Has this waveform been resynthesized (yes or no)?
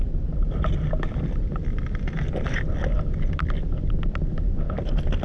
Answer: no